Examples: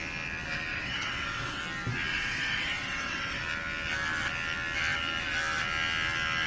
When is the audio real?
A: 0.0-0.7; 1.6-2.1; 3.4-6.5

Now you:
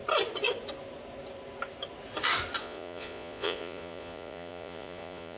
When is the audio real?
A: 0.0-2.6